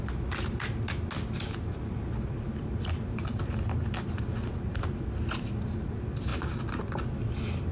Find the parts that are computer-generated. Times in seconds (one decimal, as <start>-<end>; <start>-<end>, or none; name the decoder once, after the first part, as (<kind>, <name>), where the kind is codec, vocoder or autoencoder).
none